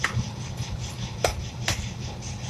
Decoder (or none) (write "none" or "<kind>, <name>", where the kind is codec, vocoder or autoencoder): none